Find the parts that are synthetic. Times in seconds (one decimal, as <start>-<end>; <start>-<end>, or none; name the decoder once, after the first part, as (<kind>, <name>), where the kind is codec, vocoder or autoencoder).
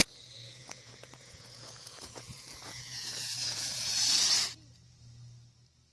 0.4-3.9 (vocoder, Vocos)